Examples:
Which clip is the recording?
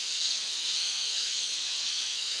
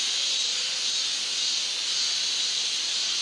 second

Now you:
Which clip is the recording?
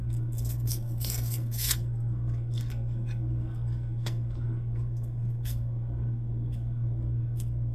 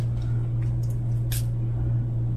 second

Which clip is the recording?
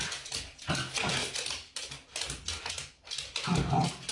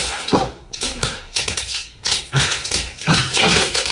first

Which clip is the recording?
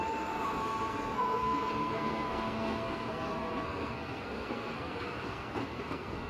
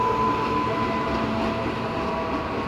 second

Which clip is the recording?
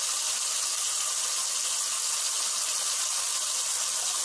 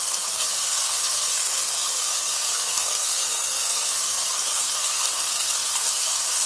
first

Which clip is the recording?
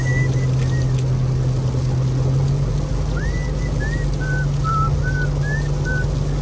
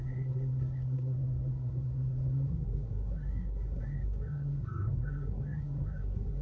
first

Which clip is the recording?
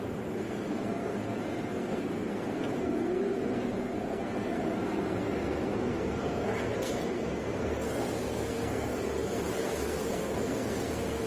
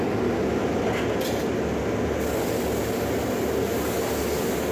second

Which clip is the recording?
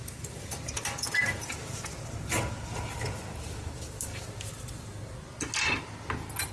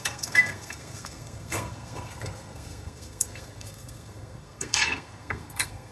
first